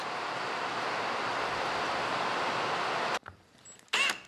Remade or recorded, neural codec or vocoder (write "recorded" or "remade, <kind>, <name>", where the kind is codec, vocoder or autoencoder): recorded